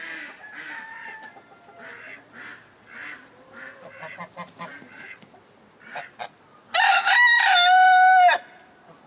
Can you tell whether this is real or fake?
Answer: real